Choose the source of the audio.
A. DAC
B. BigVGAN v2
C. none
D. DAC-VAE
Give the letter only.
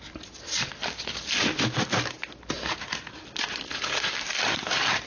C